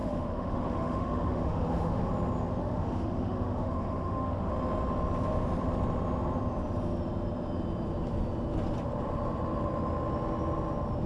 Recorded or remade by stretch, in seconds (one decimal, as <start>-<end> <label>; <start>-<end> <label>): 0.0-2.1 remade; 2.1-2.6 recorded; 2.6-4.5 remade; 4.5-11.1 recorded